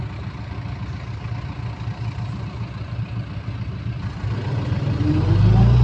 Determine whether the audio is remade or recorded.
recorded